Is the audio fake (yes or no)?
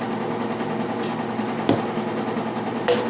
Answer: no